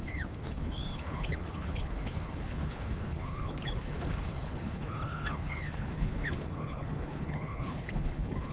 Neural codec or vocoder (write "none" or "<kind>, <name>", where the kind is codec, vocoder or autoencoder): codec, HILCodec